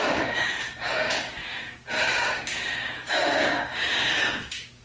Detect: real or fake fake